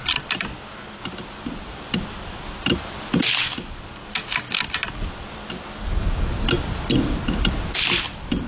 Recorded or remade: recorded